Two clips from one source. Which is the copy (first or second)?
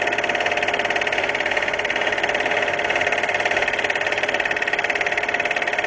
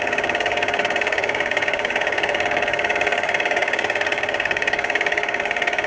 second